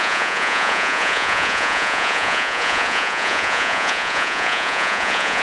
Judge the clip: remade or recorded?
remade